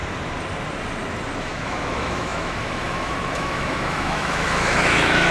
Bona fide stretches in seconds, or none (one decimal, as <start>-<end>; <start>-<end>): 0.0-1.4